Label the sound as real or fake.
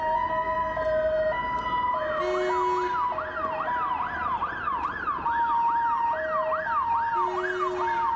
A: real